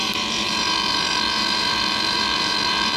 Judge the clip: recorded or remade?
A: remade